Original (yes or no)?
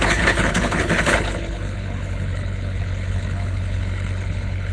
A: no